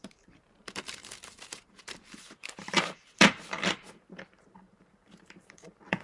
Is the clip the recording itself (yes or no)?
no